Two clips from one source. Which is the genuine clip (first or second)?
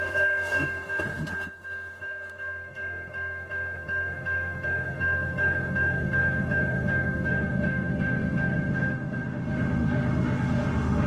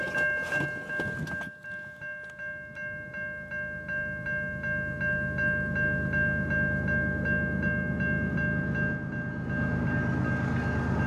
second